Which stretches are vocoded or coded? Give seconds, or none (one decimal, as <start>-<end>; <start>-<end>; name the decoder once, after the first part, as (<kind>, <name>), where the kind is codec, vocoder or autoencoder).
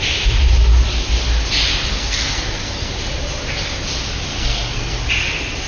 1.9-2.9 (codec, SNAC); 4.3-5.0